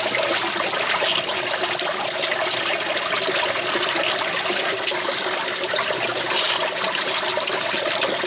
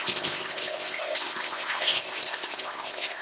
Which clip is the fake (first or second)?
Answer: second